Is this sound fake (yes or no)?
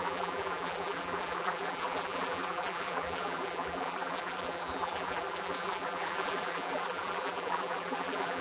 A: yes